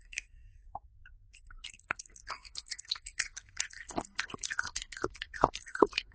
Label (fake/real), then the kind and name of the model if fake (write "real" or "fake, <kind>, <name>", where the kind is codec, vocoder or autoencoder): fake, codec, SNAC